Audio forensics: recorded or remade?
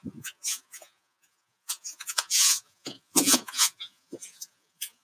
remade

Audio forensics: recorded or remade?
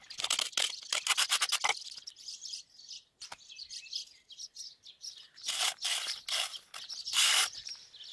recorded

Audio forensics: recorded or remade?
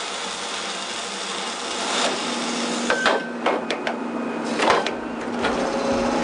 recorded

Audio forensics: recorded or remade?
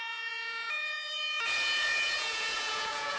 remade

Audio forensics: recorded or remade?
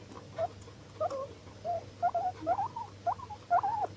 recorded